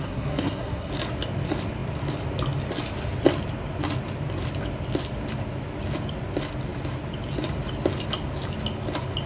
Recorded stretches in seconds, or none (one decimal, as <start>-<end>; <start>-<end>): 0.9-9.3